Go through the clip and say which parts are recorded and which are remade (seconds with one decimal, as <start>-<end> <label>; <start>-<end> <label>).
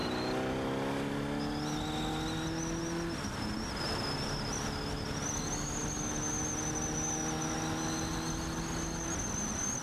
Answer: 0.0-9.8 recorded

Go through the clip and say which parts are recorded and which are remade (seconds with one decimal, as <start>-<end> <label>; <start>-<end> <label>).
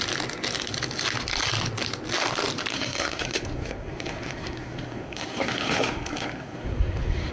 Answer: 0.0-2.7 recorded; 2.7-7.3 remade